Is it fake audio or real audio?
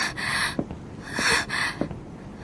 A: real